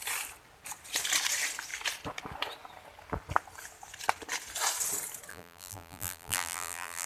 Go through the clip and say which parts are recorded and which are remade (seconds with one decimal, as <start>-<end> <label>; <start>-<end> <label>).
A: 0.0-5.3 recorded; 5.3-7.1 remade